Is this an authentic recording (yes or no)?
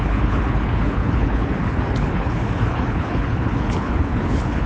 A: no